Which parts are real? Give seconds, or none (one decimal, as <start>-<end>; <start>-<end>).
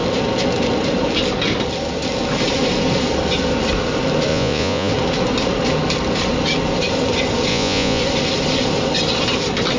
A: 0.0-4.3; 4.9-7.5; 8.0-9.8